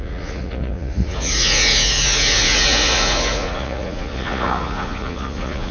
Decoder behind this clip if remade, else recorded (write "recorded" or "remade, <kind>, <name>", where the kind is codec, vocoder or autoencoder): remade, vocoder, Vocos